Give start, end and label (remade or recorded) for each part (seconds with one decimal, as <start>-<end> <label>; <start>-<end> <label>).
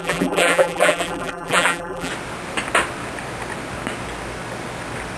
0.0-2.1 remade; 2.1-5.2 recorded